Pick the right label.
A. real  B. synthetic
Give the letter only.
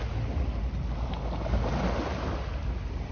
A